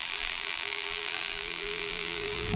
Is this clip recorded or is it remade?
remade